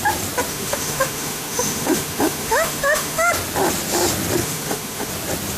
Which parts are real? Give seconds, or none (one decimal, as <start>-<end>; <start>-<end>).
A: 0.0-0.5; 3.3-4.4; 5.1-5.6